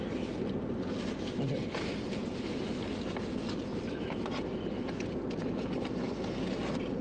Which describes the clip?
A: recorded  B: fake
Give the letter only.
A